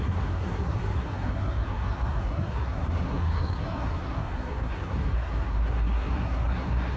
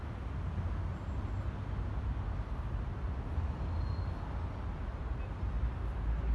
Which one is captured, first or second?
second